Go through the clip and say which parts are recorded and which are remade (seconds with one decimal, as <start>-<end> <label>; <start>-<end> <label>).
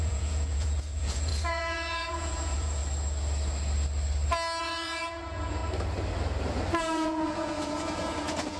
0.0-2.8 remade; 2.8-4.6 recorded; 4.6-5.6 remade; 5.6-6.8 recorded; 6.8-8.6 remade